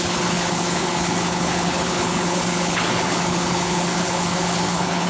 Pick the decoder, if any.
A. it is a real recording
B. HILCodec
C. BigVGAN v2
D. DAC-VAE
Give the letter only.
B